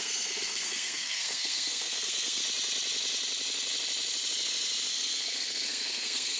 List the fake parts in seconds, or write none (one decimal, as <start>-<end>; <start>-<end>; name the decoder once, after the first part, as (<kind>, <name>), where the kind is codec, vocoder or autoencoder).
0.0-2.4 (codec, SNAC); 4.9-6.4